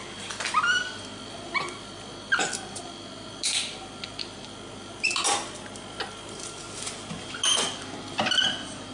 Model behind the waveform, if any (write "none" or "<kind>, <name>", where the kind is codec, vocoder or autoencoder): none